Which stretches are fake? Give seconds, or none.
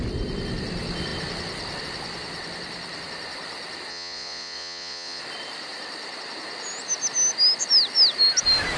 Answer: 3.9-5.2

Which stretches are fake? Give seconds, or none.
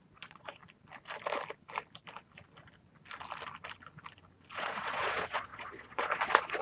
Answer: 0.0-0.6; 4.5-6.6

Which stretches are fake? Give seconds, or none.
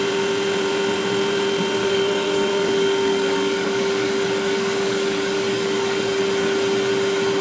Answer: 1.8-6.2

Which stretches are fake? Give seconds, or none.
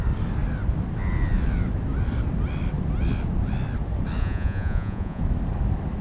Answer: 4.2-5.2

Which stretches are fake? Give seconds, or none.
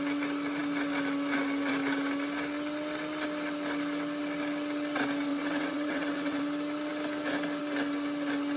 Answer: 5.3-6.4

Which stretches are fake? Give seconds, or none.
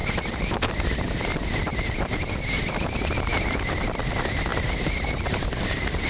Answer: 4.5-6.1